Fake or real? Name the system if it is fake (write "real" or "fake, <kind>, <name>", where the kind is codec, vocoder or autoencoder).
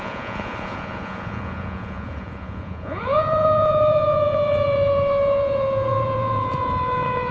fake, vocoder, Vocos